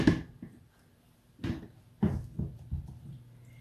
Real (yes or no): yes